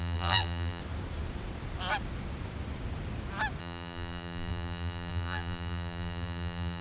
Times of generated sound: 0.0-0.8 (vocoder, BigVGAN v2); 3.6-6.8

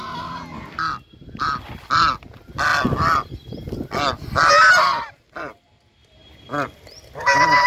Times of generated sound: none

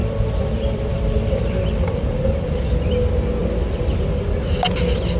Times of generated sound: 0.0-2.9 (vocoder, BigVGAN v2)

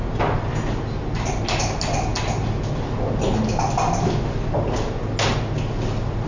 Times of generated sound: none

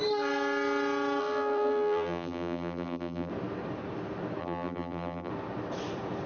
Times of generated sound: 1.2-3.3 (vocoder, BigVGAN v2); 4.4-5.3